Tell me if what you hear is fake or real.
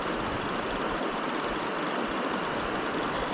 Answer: real